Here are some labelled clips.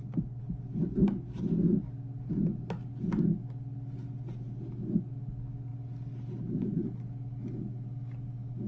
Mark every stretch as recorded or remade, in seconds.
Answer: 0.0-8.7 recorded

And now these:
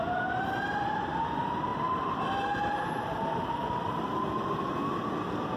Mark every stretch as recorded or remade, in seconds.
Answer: 0.0-5.6 recorded

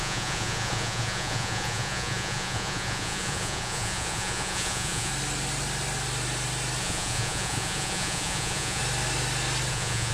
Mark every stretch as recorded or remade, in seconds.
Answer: 0.0-5.1 remade; 5.1-6.8 recorded; 6.8-8.8 remade; 8.8-9.7 recorded; 9.7-10.1 remade